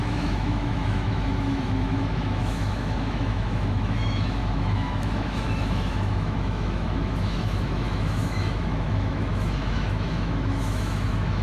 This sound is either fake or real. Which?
fake